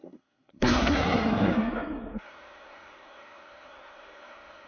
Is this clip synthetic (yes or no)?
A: yes